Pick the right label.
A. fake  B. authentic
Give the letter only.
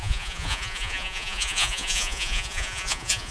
A